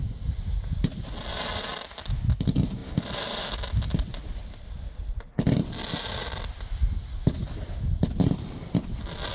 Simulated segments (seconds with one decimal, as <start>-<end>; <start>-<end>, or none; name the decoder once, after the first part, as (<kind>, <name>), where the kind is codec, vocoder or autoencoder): none